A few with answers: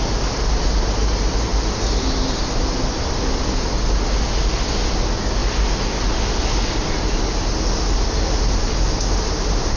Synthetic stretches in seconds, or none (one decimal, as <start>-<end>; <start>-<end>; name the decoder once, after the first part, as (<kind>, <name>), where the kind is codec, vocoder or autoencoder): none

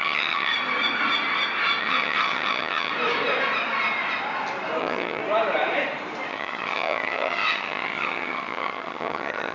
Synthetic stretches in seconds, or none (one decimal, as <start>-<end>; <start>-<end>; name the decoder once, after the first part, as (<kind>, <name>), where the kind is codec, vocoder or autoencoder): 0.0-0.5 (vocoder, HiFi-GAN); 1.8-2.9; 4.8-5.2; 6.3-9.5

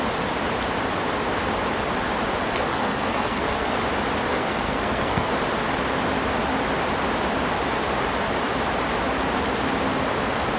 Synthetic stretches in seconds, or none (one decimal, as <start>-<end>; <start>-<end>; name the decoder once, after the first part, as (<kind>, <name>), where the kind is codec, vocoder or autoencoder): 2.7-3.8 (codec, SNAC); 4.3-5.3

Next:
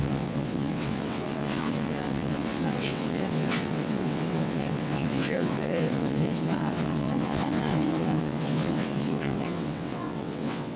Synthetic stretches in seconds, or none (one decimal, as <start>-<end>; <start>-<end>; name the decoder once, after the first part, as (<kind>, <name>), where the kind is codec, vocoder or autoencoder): 0.0-10.8 (vocoder, WaveNeXt)

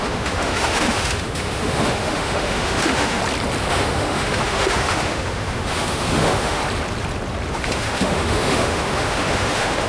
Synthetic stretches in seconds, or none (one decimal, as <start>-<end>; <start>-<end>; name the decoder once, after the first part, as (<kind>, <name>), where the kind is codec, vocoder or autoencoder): 0.0-3.2 (autoencoder, DAC-VAE); 3.7-6.6; 7.5-9.9